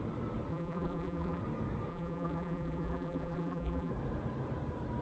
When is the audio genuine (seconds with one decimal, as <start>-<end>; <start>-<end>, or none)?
0.0-0.5; 1.4-1.9; 3.9-5.0

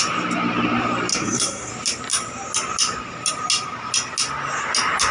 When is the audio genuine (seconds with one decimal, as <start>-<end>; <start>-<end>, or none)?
0.0-1.1; 1.7-5.1

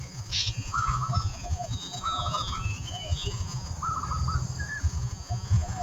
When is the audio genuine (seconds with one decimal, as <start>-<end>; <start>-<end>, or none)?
3.7-4.8

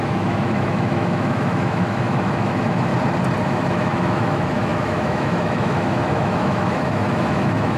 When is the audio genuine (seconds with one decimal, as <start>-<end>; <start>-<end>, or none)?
2.9-3.4

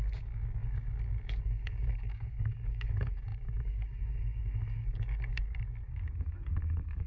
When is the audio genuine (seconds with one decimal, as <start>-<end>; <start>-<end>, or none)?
none

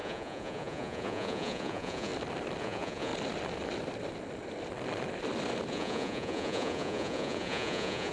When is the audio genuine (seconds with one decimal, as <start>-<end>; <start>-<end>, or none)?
2.1-2.6; 3.1-5.7